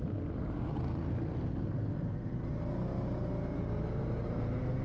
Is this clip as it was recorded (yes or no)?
yes